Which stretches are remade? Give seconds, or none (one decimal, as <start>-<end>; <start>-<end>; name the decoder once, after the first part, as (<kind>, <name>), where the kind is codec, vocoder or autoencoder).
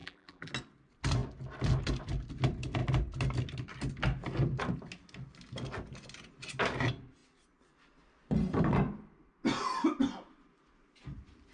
0.0-0.5 (vocoder, BigVGAN v2)